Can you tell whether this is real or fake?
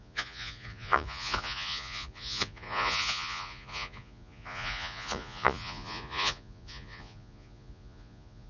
fake